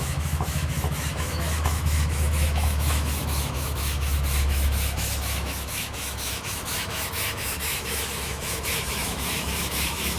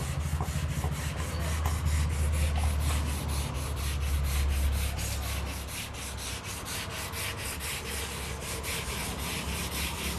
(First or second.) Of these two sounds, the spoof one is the first